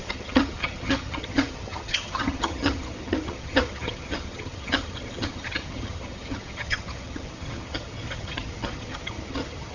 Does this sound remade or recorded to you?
remade